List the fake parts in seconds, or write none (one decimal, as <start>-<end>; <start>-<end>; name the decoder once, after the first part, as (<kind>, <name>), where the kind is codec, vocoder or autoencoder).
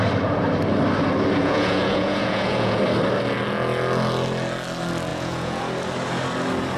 1.4-2.8 (vocoder, Vocos); 5.1-5.6